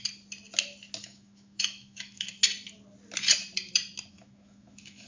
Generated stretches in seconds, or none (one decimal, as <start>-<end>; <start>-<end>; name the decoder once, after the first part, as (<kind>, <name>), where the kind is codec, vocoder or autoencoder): 1.0-2.4 (autoencoder, DAC-VAE); 4.1-5.1